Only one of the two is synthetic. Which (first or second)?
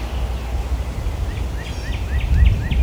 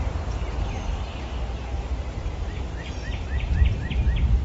second